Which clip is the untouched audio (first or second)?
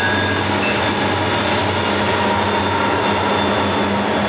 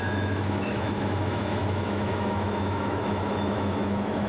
first